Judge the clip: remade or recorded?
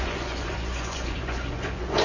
remade